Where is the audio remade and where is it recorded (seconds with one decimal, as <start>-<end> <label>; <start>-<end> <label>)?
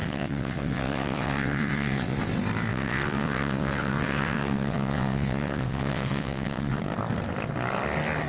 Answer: 0.0-2.2 remade; 2.2-2.7 recorded; 2.7-6.8 remade; 6.8-8.3 recorded